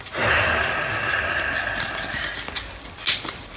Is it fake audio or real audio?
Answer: real